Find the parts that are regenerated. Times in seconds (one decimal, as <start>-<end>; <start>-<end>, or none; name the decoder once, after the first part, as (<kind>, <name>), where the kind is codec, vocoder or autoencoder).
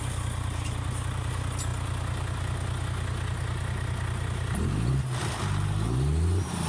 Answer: none